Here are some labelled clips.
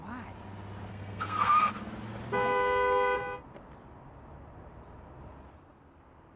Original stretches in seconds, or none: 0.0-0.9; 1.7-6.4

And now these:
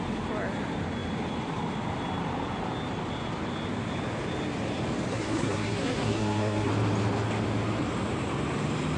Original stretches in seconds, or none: 0.0-5.1; 6.7-9.0

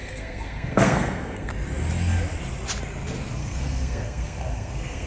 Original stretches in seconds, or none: 1.5-3.4

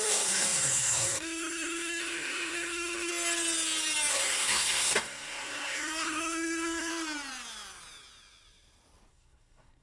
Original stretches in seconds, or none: 3.1-4.1; 6.9-9.1

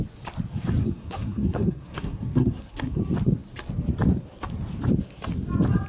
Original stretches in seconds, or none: 0.0-0.8; 3.0-5.9

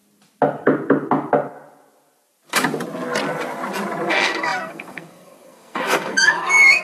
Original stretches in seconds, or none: 0.0-4.1

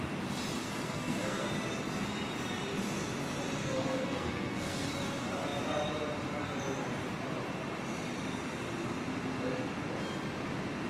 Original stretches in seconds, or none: 0.0-0.6; 1.5-3.6; 4.9-10.9